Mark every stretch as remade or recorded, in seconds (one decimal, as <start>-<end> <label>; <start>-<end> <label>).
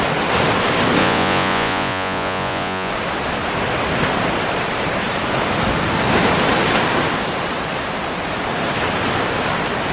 0.0-1.0 recorded; 1.0-2.9 remade; 2.9-9.9 recorded